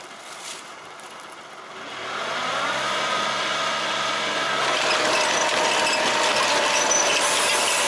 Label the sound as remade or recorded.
remade